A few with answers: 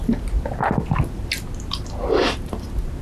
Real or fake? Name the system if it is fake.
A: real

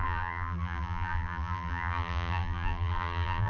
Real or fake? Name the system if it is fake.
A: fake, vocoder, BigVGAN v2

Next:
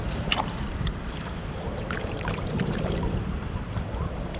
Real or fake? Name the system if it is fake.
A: fake, vocoder, BigVGAN v2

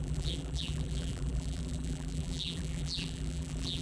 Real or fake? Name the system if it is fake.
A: fake, vocoder, BigVGAN v2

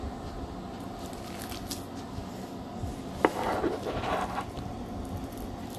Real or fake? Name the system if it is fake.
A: real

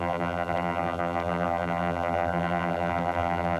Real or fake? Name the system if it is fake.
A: fake, vocoder, BigVGAN v2